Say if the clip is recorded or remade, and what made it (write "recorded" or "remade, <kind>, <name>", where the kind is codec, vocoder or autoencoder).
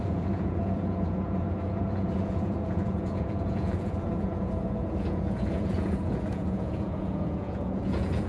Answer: remade, vocoder, Vocos